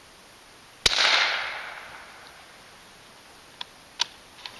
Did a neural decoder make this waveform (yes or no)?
no